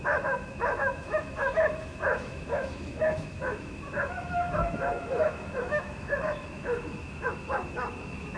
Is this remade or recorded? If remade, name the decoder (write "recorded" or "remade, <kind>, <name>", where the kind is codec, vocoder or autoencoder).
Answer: remade, autoencoder, DAC-VAE